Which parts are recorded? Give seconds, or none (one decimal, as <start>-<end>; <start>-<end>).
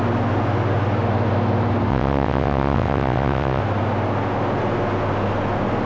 0.0-1.9; 3.6-5.9